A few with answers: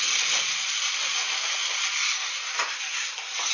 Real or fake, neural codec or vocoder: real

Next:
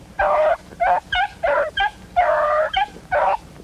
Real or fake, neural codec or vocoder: fake, vocoder, BigVGAN v2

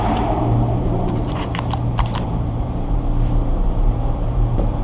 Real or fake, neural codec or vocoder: fake, vocoder, BigVGAN v2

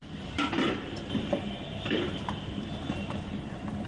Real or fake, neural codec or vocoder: fake, vocoder, BigVGAN v2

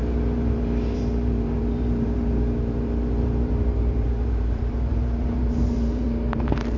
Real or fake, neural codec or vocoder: fake, vocoder, BigVGAN v2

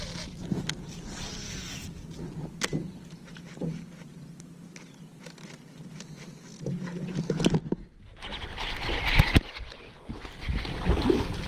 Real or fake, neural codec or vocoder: real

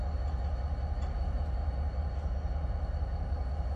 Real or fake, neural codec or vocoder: real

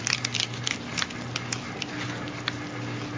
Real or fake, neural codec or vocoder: real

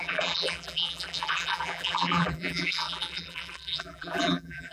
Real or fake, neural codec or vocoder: fake, vocoder, BigVGAN v2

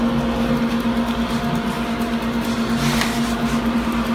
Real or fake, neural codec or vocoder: real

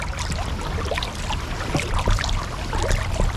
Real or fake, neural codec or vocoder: real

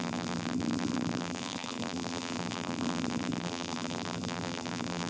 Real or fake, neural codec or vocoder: fake, vocoder, BigVGAN v2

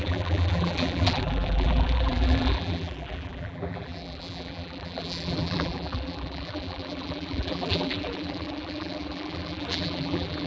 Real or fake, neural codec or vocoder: fake, vocoder, BigVGAN v2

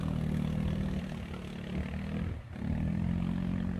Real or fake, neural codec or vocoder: fake, vocoder, BigVGAN v2